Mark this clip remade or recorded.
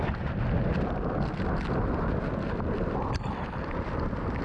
recorded